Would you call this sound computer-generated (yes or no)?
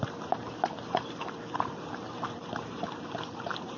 yes